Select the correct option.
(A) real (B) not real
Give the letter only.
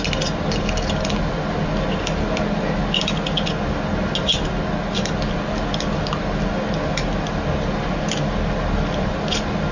A